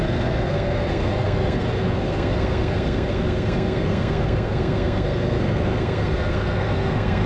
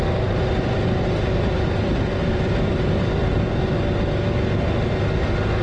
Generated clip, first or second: first